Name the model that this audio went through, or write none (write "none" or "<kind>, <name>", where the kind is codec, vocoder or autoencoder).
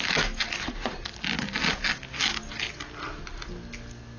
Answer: none